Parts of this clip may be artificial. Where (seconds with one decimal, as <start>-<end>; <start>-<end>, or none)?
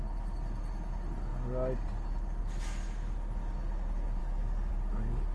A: 4.2-4.7